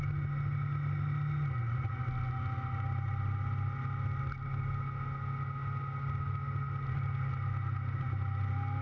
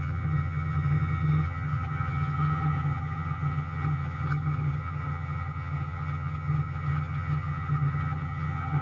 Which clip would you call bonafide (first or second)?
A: first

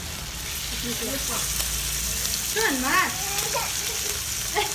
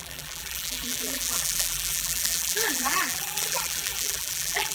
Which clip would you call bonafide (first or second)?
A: first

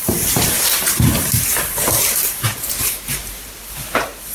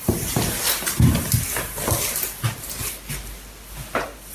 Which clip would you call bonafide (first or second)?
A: second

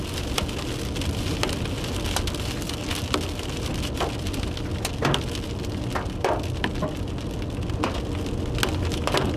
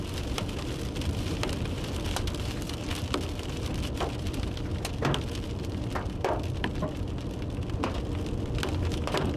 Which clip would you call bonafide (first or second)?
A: first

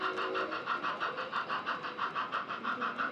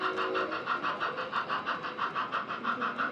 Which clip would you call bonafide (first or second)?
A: second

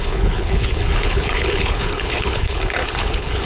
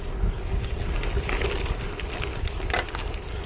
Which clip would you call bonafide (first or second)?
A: second